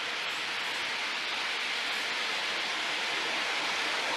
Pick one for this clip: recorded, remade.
recorded